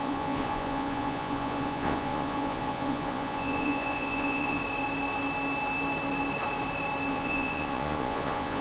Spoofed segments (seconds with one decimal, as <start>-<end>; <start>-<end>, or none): 0.0-4.6; 7.1-8.6